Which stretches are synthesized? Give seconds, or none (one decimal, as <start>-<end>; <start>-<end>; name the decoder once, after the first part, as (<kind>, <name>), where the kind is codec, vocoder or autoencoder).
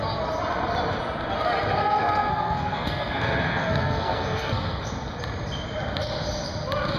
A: 1.8-4.8 (codec, SNAC)